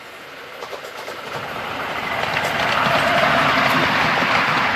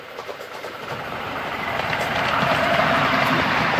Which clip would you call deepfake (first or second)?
second